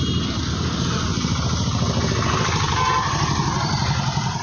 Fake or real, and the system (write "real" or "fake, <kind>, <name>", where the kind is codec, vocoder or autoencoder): real